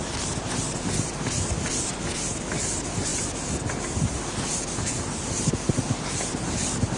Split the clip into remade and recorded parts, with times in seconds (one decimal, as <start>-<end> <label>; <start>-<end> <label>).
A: 0.0-7.0 recorded